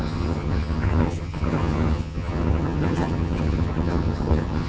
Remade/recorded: remade